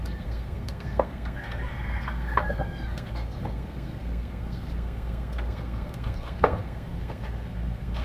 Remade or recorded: remade